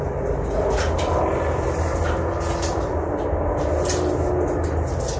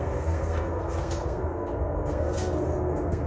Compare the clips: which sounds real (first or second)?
first